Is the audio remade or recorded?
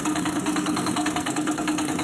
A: remade